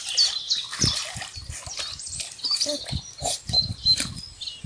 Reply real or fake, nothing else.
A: real